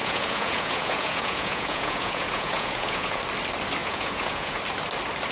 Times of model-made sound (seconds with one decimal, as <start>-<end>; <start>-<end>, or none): 0.0-3.2; 3.8-4.6